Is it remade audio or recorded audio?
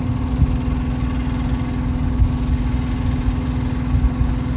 recorded